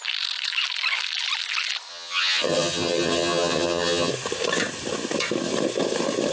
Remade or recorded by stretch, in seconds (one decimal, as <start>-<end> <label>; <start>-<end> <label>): 0.0-1.9 recorded; 1.9-4.1 remade; 4.1-6.3 recorded